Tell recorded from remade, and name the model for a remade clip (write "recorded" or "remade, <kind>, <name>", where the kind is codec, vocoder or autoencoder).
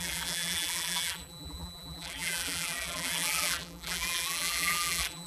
remade, vocoder, BigVGAN v2